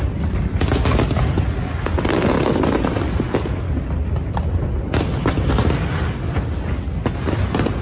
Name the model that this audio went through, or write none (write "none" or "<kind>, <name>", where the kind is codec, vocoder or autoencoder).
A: none